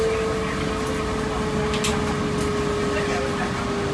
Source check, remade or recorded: recorded